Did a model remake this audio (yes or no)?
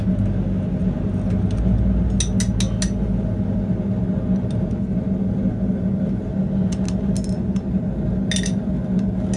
no